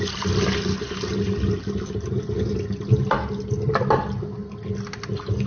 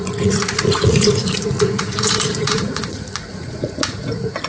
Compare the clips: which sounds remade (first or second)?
second